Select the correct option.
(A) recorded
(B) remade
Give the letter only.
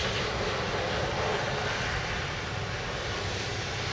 A